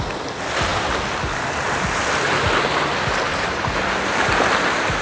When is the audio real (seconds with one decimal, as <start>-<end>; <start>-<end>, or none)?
0.0-5.0